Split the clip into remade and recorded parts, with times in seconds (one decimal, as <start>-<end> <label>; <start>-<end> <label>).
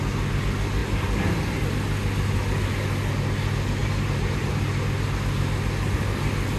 0.0-0.8 recorded; 0.8-1.6 remade; 1.6-3.8 recorded; 3.8-4.5 remade; 4.5-6.6 recorded